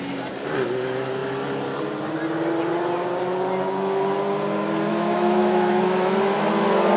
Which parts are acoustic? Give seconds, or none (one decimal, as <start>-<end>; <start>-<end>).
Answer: 0.0-4.9; 5.7-7.0